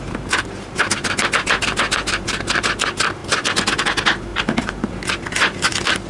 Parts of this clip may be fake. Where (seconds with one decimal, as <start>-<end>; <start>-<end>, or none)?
4.3-4.9